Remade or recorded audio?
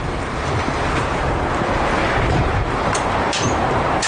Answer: remade